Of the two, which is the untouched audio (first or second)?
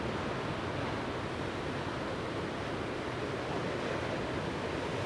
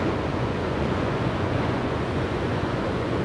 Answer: first